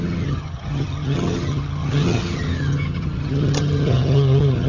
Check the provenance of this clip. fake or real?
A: fake